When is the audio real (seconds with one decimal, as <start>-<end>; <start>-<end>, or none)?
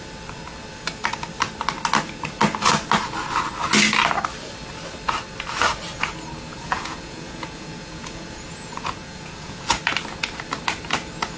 0.0-6.5; 9.8-11.4